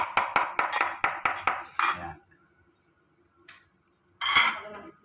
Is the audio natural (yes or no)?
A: yes